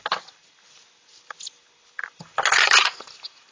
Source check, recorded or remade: recorded